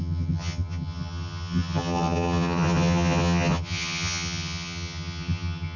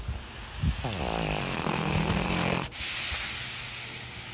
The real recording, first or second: second